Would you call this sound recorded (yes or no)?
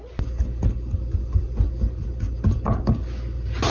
yes